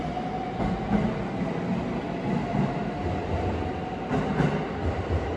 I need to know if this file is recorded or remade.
recorded